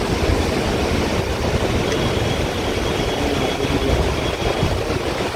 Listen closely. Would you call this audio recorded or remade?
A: recorded